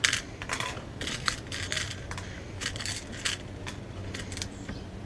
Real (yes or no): no